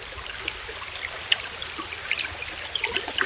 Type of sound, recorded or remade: recorded